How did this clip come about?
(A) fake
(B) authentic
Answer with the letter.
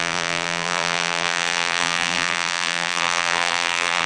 A